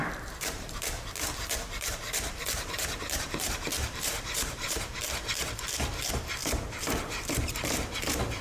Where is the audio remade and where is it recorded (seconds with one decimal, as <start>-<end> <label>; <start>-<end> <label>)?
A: 0.0-5.0 remade; 5.0-6.4 recorded; 6.4-8.4 remade